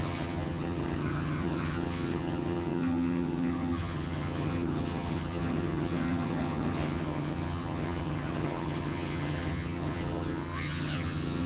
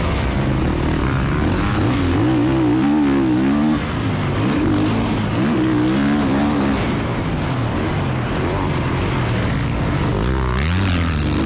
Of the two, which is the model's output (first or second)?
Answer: first